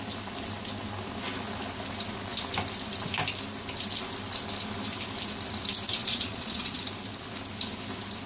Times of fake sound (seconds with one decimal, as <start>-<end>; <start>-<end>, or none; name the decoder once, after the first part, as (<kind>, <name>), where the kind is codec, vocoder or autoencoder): 6.0-6.8 (vocoder, Vocos)